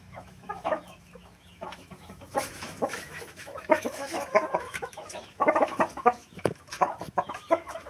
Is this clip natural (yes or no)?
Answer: no